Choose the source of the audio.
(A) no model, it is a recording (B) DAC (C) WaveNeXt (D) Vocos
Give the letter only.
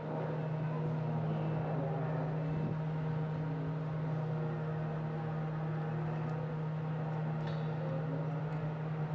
A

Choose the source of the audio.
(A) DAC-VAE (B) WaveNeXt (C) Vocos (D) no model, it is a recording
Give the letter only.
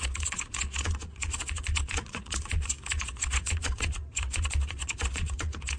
C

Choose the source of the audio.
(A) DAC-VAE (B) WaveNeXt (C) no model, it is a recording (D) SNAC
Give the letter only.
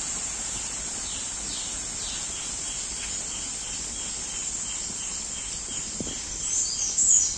C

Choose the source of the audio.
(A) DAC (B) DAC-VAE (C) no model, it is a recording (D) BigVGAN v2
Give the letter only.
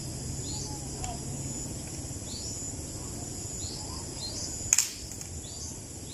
C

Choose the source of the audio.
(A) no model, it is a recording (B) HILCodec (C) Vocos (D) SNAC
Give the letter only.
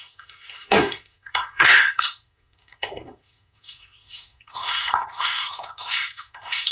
D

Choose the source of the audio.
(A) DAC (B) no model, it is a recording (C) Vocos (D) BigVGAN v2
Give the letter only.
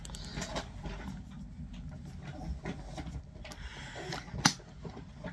B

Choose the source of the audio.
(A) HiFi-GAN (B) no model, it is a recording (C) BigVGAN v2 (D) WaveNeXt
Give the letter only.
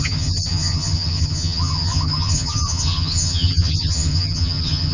A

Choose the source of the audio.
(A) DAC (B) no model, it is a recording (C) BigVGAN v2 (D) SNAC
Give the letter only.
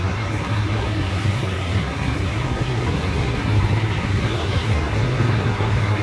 D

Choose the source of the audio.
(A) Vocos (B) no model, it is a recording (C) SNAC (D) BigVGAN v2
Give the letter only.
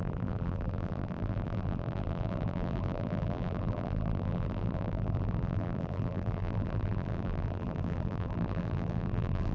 D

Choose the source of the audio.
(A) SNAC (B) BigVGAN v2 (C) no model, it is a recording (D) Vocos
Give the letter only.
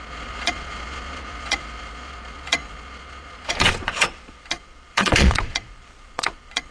D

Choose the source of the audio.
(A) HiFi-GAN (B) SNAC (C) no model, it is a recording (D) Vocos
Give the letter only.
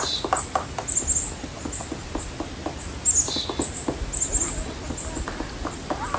C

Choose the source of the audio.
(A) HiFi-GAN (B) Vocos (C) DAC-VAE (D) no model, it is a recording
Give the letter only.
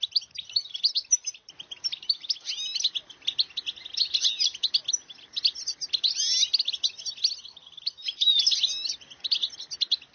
D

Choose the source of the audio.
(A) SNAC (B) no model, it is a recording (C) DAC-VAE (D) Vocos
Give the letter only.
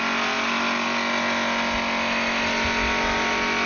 B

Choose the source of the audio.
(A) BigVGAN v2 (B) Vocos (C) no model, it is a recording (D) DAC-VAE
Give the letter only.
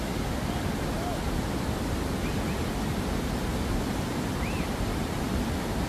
C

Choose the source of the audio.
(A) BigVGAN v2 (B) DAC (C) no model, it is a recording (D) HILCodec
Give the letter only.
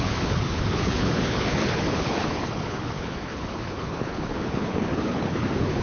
D